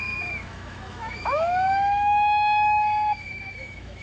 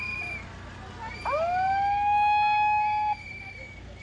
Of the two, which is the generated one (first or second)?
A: first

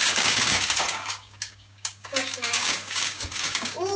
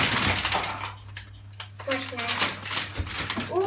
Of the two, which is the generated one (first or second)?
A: first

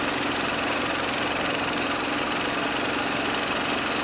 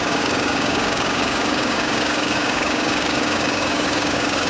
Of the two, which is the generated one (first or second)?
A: second